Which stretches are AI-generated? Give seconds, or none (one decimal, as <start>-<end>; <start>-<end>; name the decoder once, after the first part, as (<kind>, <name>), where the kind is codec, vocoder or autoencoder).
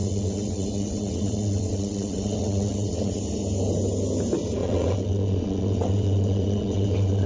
0.0-3.2 (vocoder, WaveNeXt); 4.6-7.3